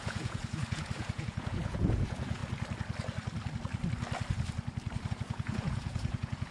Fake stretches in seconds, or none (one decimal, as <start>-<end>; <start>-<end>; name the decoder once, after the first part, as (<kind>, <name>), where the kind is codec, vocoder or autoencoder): 0.0-2.4 (vocoder, Vocos); 5.1-6.5

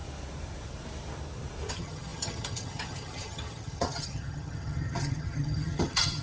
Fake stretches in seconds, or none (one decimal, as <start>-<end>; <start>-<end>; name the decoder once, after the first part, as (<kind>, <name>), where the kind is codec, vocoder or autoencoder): 1.7-6.2 (vocoder, HiFi-GAN)

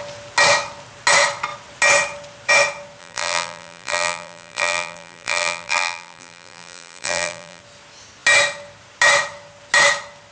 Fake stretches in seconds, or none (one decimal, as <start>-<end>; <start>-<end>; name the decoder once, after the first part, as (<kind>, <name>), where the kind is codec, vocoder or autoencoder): 3.0-7.6 (vocoder, BigVGAN v2)

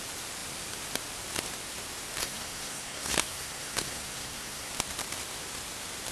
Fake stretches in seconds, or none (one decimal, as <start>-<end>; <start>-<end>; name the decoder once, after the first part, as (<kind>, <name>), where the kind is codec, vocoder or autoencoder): 2.2-4.7 (codec, SNAC)